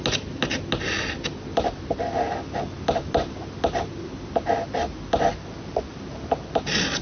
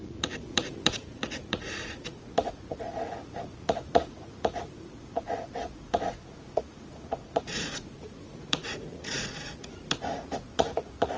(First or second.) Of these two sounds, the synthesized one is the second